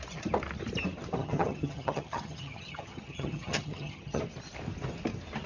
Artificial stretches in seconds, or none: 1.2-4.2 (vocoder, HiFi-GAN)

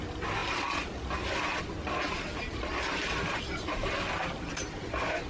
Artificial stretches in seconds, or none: none

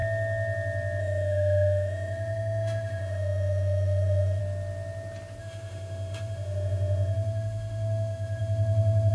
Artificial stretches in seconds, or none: 1.0-4.4 (autoencoder, DAC-VAE); 5.4-9.1

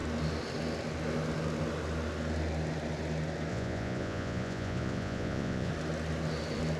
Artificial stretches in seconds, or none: 3.5-5.7 (vocoder, Vocos)

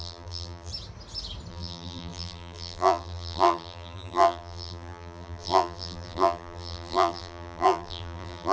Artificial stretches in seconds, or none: 0.0-0.7 (vocoder, BigVGAN v2); 1.5-8.5

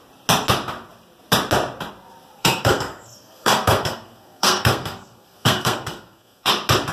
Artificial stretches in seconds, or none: 2.4-6.5 (codec, SNAC)

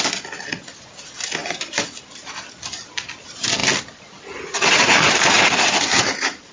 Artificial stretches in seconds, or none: 3.6-6.5 (vocoder, BigVGAN v2)